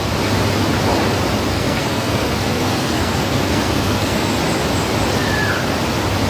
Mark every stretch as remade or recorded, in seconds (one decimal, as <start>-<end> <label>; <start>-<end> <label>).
0.0-1.5 recorded; 1.5-4.3 remade; 4.3-6.3 recorded